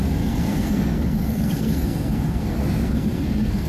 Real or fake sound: fake